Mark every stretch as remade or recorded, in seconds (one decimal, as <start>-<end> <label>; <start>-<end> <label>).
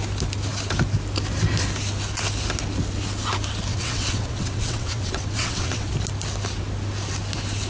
0.0-3.7 recorded; 3.7-5.9 remade; 5.9-7.7 recorded